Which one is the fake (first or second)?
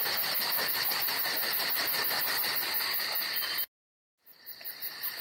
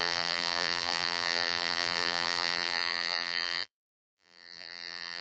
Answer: second